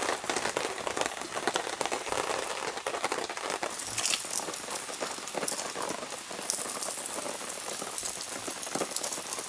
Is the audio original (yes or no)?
yes